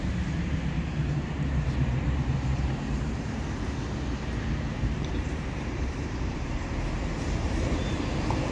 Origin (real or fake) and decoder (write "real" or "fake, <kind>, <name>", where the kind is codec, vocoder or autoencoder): fake, vocoder, BigVGAN v2